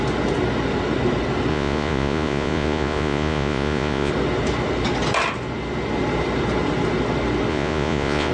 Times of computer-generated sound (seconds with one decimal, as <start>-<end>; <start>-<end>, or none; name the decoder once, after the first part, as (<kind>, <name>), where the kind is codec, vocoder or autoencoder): 1.5-4.1 (vocoder, Vocos); 7.5-8.3